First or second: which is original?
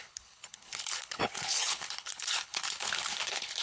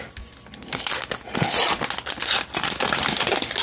second